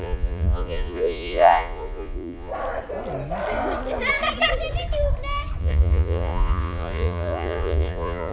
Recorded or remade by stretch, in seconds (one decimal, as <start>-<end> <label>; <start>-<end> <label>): 0.0-2.5 remade; 2.5-5.6 recorded; 5.6-8.3 remade